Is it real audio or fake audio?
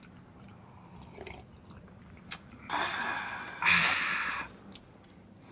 real